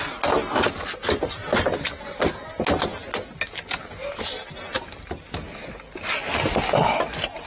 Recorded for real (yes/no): yes